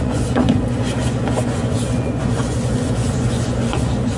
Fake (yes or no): yes